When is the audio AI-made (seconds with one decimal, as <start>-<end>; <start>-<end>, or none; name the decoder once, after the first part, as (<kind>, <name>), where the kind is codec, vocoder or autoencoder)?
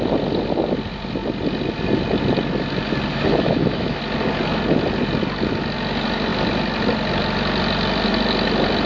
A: 3.1-4.0 (autoencoder, DAC-VAE)